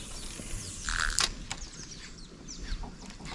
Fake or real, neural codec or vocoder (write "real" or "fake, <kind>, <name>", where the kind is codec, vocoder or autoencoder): real